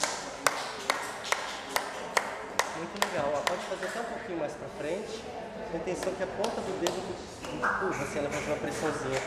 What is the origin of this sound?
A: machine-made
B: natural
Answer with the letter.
B